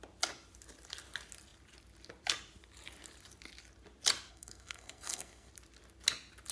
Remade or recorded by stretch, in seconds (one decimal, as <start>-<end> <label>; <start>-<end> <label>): 0.0-4.3 recorded; 4.3-5.5 remade; 5.5-6.5 recorded